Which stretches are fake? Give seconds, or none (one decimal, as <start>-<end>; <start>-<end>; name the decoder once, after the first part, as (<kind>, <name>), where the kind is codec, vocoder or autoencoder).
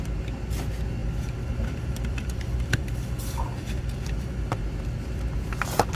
1.0-4.6 (vocoder, BigVGAN v2)